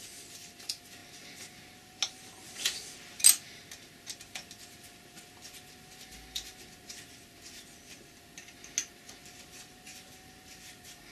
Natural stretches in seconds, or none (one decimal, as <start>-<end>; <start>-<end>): 0.0-11.1